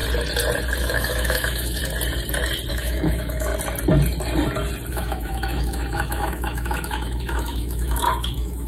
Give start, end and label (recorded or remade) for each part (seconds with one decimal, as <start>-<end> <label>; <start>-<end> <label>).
0.0-0.8 recorded; 0.8-1.8 remade; 1.8-2.7 recorded; 2.7-3.5 remade; 3.5-4.9 recorded; 4.9-8.7 remade